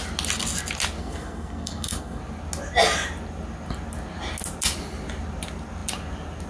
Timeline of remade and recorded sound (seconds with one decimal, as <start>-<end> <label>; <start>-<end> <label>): 0.0-1.0 recorded; 1.0-2.2 remade; 2.2-6.5 recorded